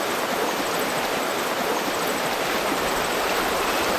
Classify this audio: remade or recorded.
recorded